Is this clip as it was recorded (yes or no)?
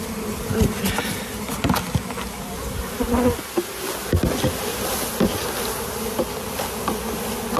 yes